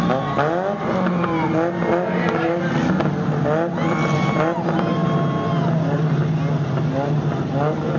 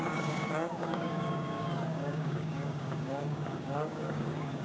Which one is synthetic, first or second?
second